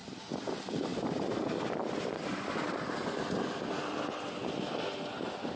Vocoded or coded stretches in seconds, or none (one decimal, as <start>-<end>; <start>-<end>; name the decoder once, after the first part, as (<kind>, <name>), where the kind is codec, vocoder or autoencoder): 0.0-0.5 (vocoder, BigVGAN v2); 0.9-4.2